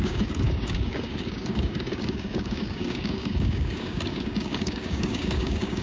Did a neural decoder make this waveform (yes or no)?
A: yes